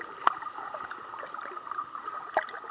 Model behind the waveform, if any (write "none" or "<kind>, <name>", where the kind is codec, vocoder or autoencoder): none